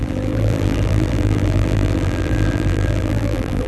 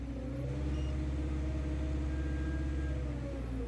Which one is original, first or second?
second